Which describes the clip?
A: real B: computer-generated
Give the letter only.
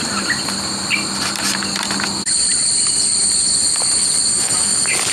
A